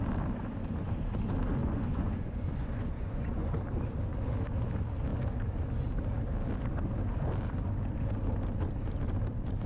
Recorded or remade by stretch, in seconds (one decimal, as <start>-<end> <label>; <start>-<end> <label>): 0.0-1.6 recorded; 1.6-3.5 remade; 3.5-9.7 recorded